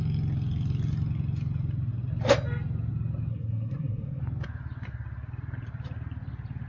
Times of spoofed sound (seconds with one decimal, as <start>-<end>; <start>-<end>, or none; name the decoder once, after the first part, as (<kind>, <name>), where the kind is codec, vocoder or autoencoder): 3.3-4.2 (codec, SNAC)